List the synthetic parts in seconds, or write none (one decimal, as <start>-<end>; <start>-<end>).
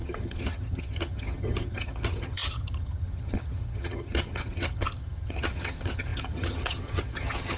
0.0-7.6